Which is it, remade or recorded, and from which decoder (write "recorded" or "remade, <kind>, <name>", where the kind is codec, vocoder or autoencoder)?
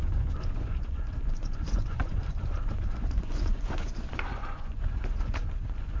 remade, vocoder, Vocos